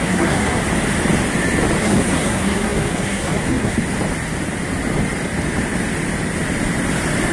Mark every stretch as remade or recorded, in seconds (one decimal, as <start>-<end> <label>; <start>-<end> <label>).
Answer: 0.0-0.6 remade; 0.6-1.8 recorded; 1.8-3.8 remade; 3.8-7.3 recorded